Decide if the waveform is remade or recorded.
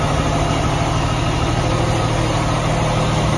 recorded